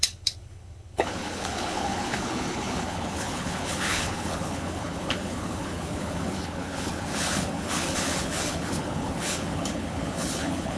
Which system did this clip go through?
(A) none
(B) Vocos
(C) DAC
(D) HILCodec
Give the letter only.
D